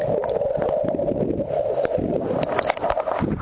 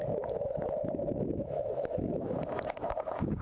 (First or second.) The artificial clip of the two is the second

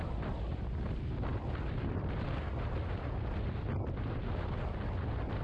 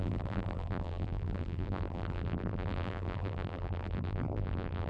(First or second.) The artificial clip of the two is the second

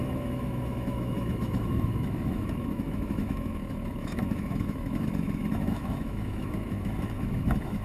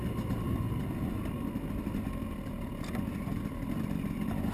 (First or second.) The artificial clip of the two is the first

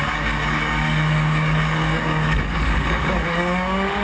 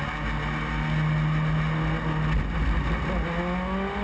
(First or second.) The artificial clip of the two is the first